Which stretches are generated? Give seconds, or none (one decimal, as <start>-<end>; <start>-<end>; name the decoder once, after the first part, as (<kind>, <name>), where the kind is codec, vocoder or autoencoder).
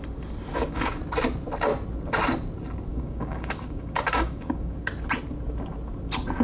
0.5-1.0 (codec, DAC); 2.9-4.9